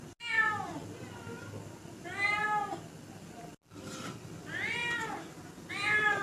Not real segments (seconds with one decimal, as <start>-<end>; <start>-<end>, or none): 4.8-5.7